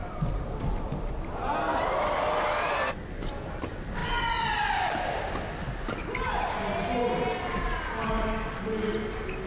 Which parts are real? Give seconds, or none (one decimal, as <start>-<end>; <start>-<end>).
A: 0.0-9.5